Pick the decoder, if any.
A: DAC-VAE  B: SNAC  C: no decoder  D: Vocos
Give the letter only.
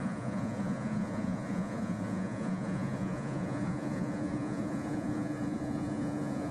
D